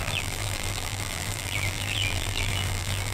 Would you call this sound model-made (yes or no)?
yes